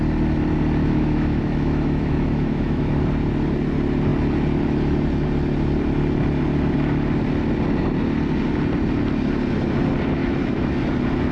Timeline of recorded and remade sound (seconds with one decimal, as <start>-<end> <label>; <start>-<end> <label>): 0.0-0.8 recorded; 0.8-2.9 remade; 2.9-10.2 recorded; 10.2-10.9 remade; 10.9-11.3 recorded

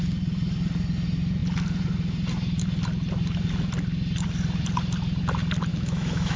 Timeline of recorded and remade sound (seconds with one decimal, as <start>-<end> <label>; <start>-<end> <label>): 0.0-5.7 recorded; 5.7-6.4 remade

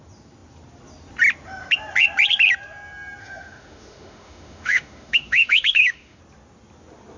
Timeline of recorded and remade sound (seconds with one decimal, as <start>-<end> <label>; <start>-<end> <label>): 0.0-3.2 recorded; 3.2-6.2 remade; 6.2-7.2 recorded

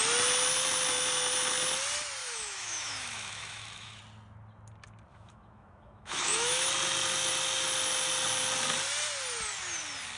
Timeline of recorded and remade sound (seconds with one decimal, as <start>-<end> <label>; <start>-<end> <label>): 0.0-2.2 recorded; 2.2-4.0 remade; 4.0-5.1 recorded; 5.1-6.7 remade; 6.7-10.2 recorded